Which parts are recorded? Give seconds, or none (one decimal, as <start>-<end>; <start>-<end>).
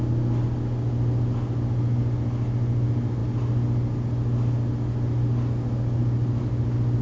0.0-7.0